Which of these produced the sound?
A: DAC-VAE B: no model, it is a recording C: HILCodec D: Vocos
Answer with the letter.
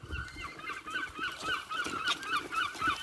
B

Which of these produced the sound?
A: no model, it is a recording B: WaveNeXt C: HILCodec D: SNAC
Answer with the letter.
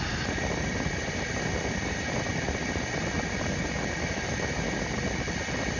A